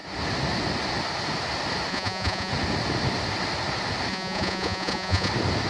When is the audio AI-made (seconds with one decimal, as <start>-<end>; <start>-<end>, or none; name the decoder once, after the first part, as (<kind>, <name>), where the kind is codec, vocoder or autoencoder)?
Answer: 1.9-2.5 (vocoder, Vocos); 4.1-5.3